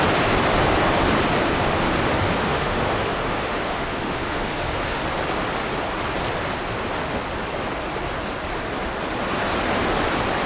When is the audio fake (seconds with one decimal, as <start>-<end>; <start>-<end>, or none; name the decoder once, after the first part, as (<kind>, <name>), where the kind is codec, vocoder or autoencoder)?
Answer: 2.4-5.0 (autoencoder, DAC-VAE)